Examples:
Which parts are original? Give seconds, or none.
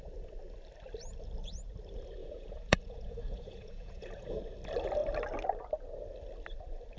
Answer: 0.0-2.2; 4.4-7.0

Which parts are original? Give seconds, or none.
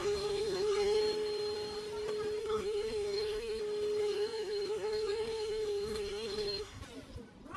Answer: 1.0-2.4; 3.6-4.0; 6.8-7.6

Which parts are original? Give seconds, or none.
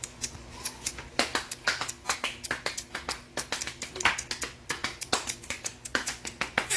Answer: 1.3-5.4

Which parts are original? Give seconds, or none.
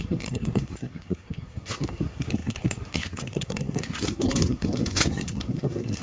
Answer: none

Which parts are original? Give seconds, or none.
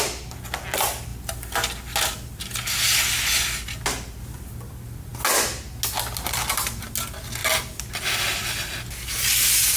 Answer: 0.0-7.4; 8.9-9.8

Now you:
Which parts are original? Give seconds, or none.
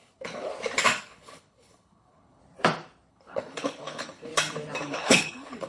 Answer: 0.5-1.0; 2.4-3.1; 4.3-4.8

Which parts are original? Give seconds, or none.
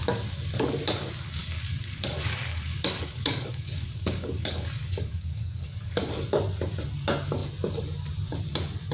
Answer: 0.0-1.4; 6.0-8.9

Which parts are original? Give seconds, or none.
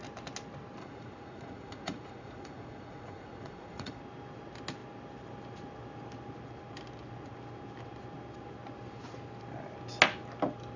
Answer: 0.0-0.8; 4.0-10.8